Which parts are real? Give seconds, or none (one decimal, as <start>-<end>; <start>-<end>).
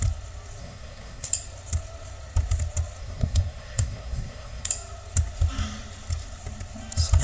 0.0-0.6; 1.3-3.0; 4.7-7.2